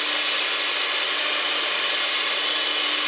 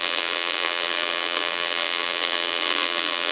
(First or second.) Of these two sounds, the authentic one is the first